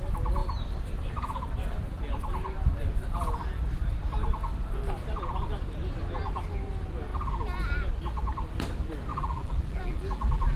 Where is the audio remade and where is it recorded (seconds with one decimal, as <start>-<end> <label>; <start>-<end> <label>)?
0.0-9.1 recorded; 9.1-10.6 remade